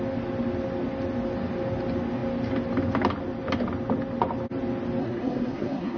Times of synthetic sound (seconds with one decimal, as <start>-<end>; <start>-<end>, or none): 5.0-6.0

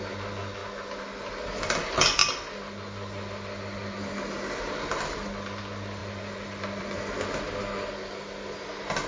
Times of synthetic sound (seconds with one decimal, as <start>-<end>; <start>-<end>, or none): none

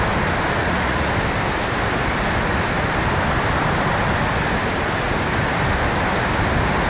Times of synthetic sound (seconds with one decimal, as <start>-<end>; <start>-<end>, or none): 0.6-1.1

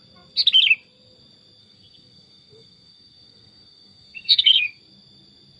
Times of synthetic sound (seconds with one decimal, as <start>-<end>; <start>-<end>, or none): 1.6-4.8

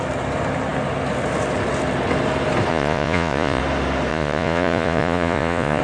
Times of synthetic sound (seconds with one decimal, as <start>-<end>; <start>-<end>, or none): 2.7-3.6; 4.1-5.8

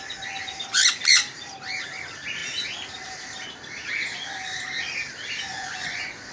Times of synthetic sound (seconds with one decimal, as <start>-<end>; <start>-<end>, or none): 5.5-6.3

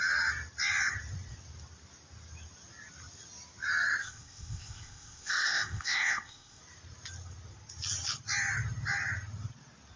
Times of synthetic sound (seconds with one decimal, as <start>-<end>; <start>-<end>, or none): 4.0-6.6

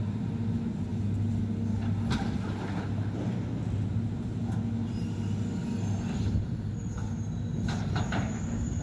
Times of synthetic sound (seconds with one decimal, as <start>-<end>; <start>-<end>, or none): none